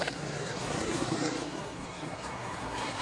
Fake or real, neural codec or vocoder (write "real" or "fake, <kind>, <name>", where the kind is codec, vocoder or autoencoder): fake, codec, SNAC